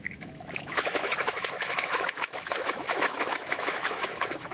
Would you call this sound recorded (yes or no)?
no